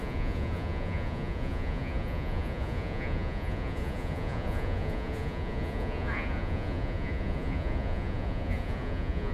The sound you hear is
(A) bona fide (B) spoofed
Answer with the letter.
B